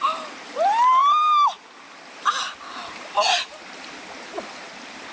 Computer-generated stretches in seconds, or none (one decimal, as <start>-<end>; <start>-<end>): none